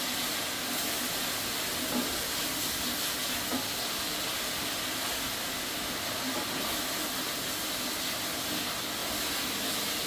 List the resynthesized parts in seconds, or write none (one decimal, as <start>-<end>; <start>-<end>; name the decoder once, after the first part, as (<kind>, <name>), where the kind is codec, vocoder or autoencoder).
3.5-4.3 (vocoder, BigVGAN v2)